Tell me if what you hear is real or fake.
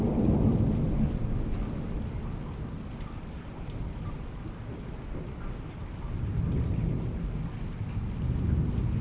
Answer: real